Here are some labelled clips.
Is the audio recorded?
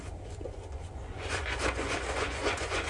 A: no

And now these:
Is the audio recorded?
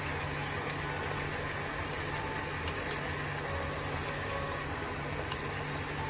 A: yes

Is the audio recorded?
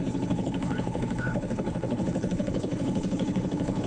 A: no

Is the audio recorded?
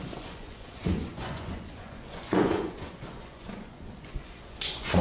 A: no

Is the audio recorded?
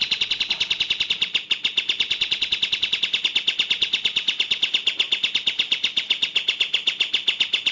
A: yes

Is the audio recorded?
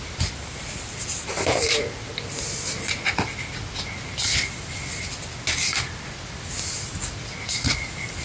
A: yes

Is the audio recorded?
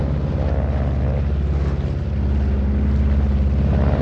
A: yes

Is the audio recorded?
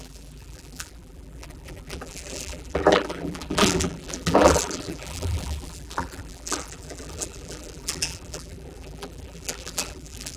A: no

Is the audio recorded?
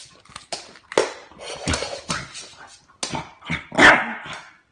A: yes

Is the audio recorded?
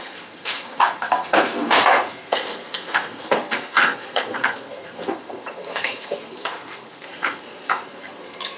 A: no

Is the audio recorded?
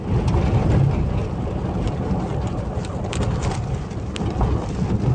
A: yes